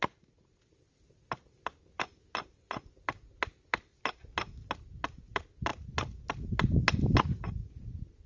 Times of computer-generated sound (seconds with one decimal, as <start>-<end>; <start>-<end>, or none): none